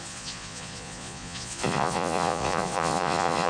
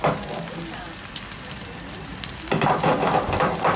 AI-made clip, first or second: first